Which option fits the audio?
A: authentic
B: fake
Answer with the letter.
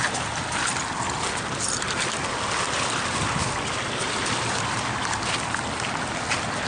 A